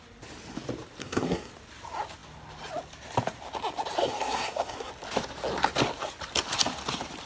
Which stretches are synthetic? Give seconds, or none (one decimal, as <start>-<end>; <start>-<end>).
1.0-1.5; 4.0-4.9